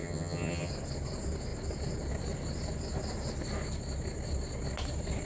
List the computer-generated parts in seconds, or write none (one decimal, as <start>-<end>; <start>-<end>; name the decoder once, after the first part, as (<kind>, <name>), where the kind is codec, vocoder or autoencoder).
0.0-0.7 (vocoder, HiFi-GAN)